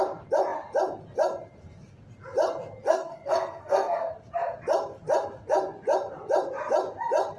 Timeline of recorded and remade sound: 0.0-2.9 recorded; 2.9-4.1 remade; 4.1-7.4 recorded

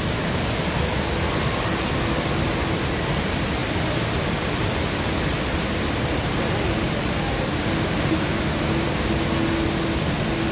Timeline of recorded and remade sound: 0.0-10.5 recorded

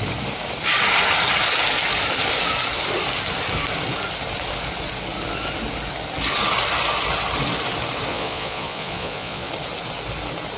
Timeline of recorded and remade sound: 0.0-8.1 recorded; 8.1-9.5 remade; 9.5-10.6 recorded

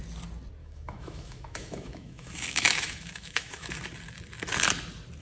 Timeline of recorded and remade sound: 0.0-0.6 recorded; 0.6-3.7 remade; 3.7-5.2 recorded

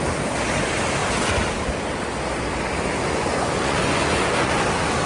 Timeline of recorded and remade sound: 0.0-3.0 recorded; 3.0-4.6 remade; 4.6-5.1 recorded

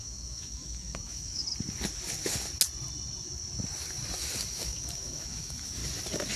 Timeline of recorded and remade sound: 0.0-1.4 remade; 1.4-4.5 recorded; 4.5-5.8 remade; 5.8-6.4 recorded

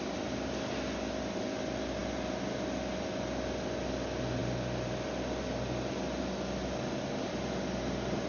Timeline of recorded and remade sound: 0.0-8.3 recorded

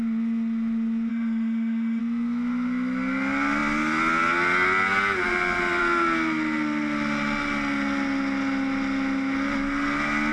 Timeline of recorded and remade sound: 0.0-1.1 recorded; 1.1-2.0 remade; 2.0-10.3 recorded